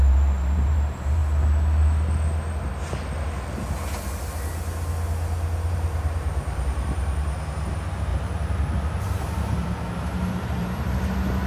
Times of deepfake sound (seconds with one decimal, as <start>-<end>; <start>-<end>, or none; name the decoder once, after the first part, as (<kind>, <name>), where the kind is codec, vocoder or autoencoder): 0.0-1.2 (vocoder, BigVGAN v2); 5.7-11.5